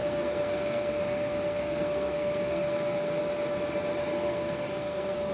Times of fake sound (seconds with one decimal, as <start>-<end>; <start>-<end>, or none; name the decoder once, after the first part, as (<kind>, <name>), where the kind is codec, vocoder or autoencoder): 0.0-3.2 (codec, SNAC); 4.1-5.3